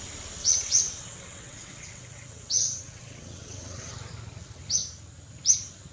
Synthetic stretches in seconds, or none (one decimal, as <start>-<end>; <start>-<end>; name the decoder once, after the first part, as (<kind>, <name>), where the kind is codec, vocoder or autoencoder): 0.4-3.9 (vocoder, WaveNeXt)